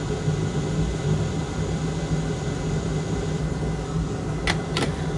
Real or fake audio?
real